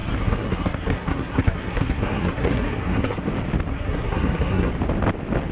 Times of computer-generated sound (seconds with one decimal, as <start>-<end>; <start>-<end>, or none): 0.0-3.3; 3.7-4.7